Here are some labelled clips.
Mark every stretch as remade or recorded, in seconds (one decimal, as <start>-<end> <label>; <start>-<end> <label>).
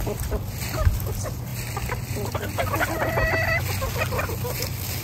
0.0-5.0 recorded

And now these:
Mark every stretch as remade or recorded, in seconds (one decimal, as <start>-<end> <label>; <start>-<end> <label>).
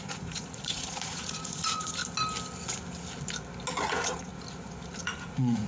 0.0-2.0 remade; 2.0-3.9 recorded; 3.9-4.3 remade; 4.3-5.0 recorded; 5.0-5.7 remade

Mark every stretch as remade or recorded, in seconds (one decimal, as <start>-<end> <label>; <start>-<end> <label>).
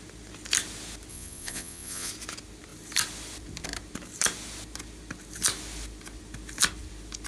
0.0-1.1 recorded; 1.1-2.1 remade; 2.1-7.3 recorded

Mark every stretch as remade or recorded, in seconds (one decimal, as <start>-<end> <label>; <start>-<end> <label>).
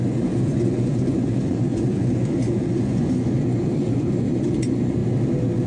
0.0-5.0 remade; 5.0-5.7 recorded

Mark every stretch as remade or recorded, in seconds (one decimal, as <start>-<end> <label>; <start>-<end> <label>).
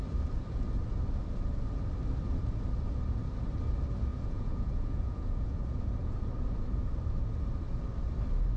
0.0-4.1 recorded; 4.1-6.1 remade; 6.1-8.6 recorded